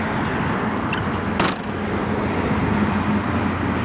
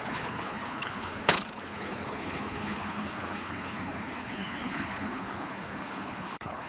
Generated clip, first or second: second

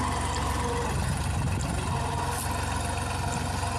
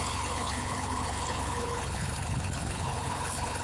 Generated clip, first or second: second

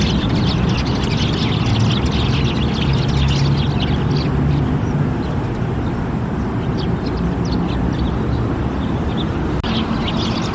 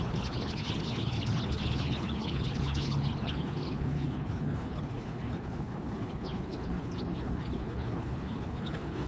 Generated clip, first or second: second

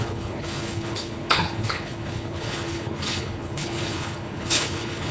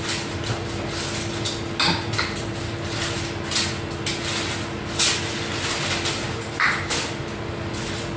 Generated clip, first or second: first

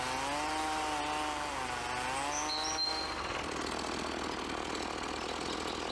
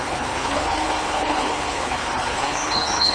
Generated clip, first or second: second